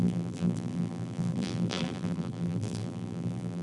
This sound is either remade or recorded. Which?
remade